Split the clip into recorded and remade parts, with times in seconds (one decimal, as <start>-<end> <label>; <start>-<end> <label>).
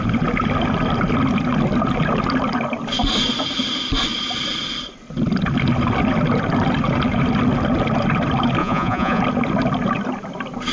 0.0-8.6 recorded; 8.6-9.2 remade; 9.2-10.7 recorded